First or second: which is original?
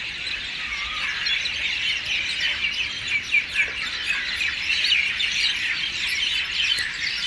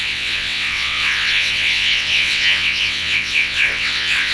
first